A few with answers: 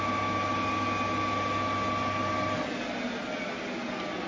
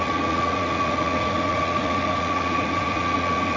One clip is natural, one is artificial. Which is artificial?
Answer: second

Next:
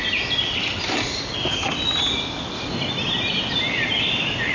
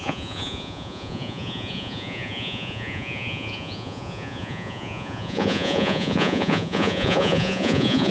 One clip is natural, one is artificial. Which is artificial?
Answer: second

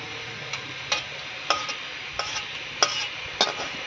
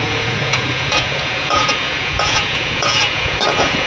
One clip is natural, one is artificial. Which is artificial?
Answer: second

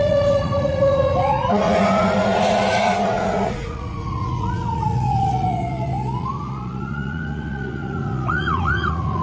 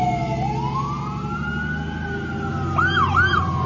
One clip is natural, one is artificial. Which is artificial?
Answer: first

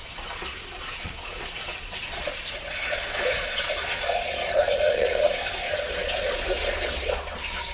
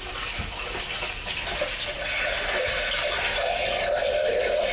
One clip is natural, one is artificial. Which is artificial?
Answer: first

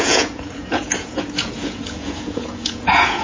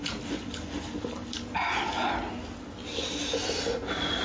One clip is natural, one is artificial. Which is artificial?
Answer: first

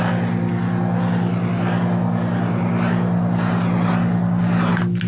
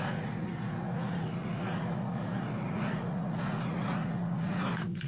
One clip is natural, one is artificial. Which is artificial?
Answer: second